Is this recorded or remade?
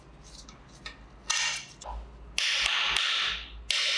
recorded